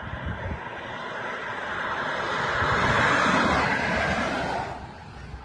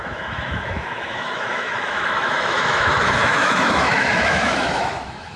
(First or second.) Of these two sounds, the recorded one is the first